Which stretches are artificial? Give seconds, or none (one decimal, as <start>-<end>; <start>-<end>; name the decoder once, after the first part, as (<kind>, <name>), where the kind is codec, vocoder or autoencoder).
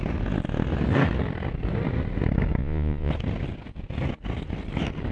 2.6-3.1 (vocoder, Vocos)